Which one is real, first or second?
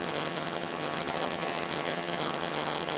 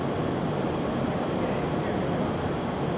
second